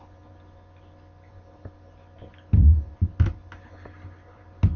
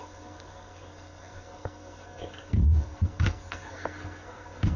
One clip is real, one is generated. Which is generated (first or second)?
second